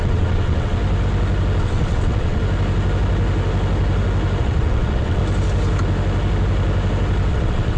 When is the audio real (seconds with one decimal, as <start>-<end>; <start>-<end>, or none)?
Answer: 0.8-1.6; 2.4-4.4; 5.2-7.3